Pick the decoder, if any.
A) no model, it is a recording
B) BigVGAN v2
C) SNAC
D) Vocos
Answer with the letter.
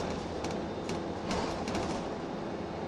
A